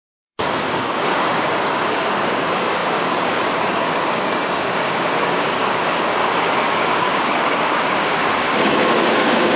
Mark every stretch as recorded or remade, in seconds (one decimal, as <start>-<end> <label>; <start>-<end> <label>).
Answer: 0.0-9.6 remade